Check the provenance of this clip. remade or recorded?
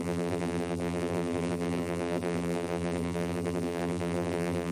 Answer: remade